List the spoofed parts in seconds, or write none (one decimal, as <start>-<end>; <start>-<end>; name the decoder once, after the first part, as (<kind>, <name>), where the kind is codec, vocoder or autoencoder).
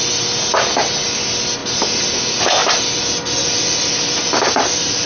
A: none